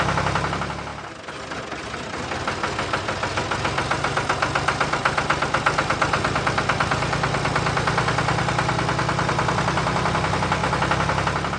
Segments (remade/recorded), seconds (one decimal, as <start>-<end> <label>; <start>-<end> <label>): 0.0-11.6 recorded